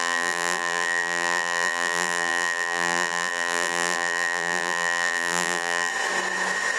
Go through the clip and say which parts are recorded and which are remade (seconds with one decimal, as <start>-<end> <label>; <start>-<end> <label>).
0.0-5.9 remade; 5.9-6.8 recorded